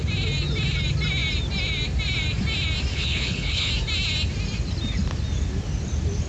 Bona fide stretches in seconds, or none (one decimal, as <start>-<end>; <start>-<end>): 0.0-2.9; 3.7-6.3